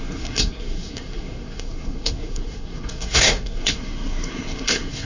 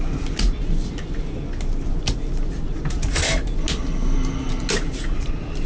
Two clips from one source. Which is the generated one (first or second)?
first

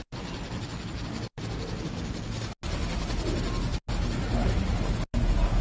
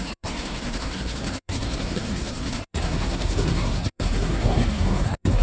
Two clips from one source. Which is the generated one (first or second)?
second